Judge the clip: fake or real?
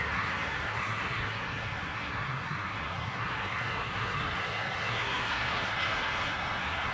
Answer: fake